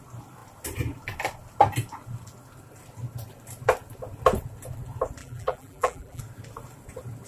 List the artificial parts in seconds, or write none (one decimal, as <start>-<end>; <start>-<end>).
5.2-6.2